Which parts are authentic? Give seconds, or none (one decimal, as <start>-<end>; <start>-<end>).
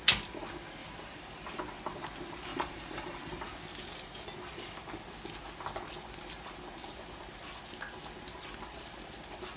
0.0-0.8; 1.6-2.5; 3.3-9.6